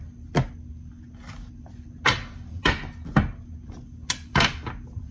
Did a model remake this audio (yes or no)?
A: no